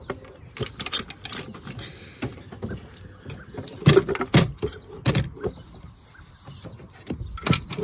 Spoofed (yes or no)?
no